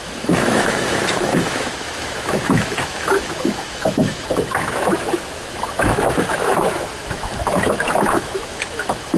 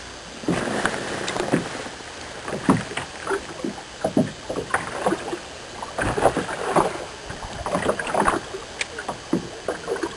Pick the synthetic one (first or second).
first